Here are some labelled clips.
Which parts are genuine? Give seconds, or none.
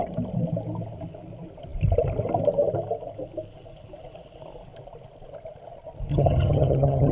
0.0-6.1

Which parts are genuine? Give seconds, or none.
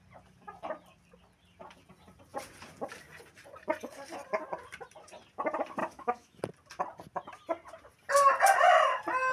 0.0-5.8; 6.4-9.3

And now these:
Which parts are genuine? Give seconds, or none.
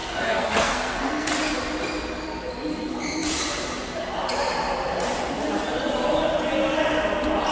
1.3-7.5